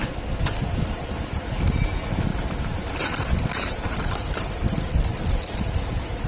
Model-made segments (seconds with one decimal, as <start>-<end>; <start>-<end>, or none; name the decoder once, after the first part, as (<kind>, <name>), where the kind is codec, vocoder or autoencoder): 2.3-5.6 (vocoder, BigVGAN v2)